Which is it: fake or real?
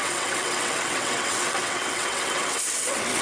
fake